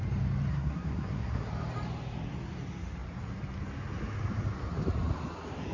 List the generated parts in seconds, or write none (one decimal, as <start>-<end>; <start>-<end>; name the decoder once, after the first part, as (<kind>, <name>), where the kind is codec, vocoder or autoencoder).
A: 0.5-1.5 (codec, SNAC)